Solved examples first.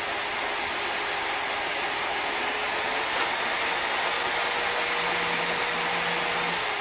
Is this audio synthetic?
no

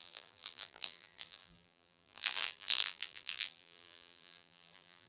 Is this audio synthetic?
yes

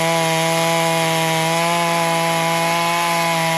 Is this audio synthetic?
no